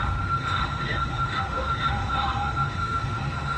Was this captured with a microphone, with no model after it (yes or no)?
no